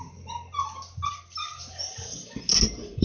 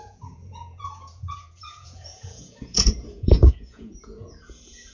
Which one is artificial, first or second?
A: second